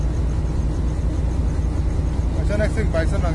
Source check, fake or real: real